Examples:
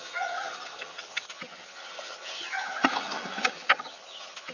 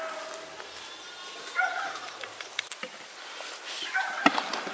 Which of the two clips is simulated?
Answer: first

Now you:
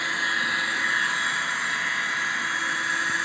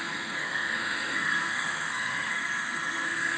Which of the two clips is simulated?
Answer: second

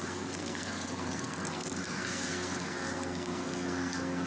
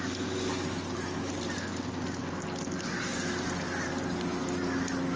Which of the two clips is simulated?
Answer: first